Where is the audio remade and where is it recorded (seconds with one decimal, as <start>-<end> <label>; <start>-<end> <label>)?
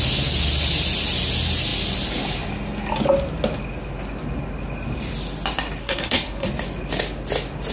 0.0-5.8 recorded; 5.8-6.5 remade; 6.5-7.7 recorded